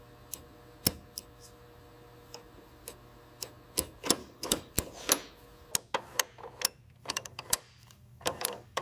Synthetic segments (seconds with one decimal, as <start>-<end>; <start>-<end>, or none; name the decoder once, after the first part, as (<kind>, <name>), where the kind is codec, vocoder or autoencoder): 4.2-4.7 (codec, DAC); 7.0-8.8